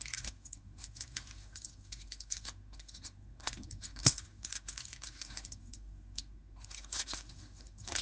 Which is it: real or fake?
fake